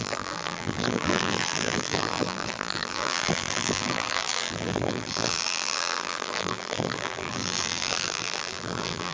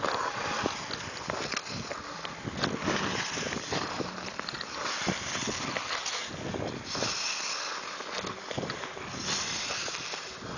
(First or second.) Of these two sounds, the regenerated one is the first